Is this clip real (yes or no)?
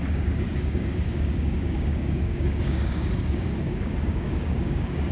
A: no